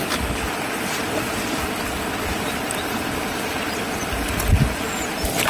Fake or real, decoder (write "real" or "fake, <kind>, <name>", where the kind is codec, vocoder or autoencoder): real